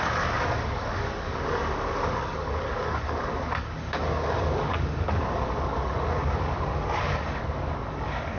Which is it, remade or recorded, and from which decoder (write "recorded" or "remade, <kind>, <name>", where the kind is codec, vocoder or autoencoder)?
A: remade, codec, DAC